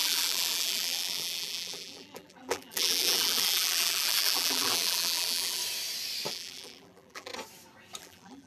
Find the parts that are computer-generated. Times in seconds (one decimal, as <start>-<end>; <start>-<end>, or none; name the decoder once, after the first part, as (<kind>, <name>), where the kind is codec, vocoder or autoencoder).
0.0-5.6 (vocoder, BigVGAN v2); 6.3-7.3; 8.0-8.5